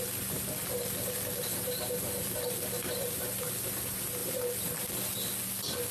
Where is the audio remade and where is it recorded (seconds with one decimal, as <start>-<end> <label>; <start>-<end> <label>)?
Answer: 0.0-5.9 recorded